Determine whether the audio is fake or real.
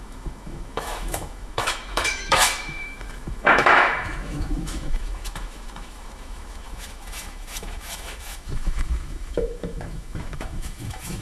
fake